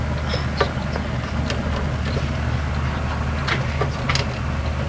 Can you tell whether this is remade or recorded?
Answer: recorded